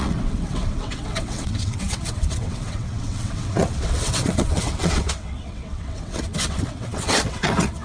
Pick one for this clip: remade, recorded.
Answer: remade